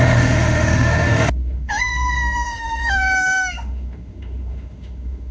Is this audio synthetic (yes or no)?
yes